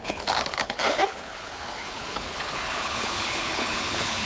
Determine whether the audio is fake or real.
fake